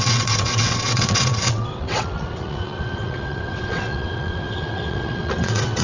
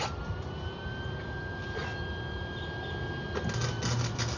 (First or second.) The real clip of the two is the second